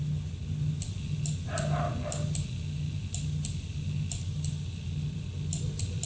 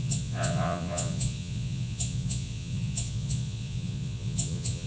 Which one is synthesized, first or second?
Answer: second